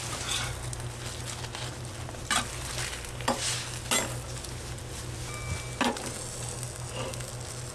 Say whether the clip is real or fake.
real